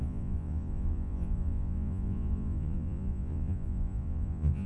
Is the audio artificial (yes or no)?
yes